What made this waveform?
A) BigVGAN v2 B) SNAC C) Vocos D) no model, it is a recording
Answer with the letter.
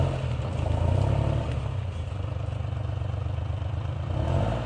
D